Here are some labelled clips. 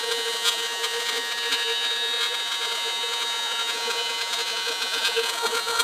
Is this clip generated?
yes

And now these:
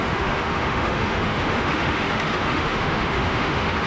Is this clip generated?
yes